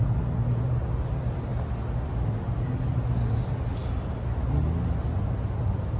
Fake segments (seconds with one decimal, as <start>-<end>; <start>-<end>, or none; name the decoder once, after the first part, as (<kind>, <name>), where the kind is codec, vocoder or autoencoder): none

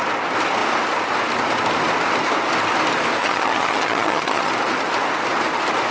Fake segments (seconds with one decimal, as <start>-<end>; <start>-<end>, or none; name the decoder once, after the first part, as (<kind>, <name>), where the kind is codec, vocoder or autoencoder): 3.2-4.5 (vocoder, HiFi-GAN)

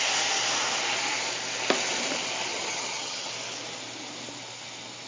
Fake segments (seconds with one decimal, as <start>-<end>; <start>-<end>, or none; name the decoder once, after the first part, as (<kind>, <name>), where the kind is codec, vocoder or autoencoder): 2.5-3.3 (vocoder, HiFi-GAN)

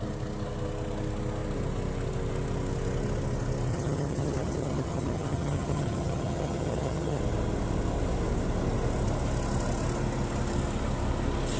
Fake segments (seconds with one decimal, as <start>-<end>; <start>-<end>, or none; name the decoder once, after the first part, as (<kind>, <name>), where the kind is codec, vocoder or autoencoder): 3.7-7.2 (vocoder, HiFi-GAN)